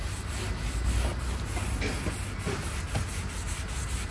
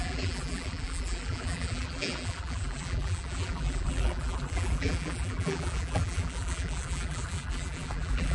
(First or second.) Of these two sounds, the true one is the first